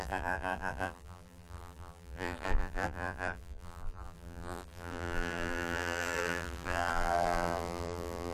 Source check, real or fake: fake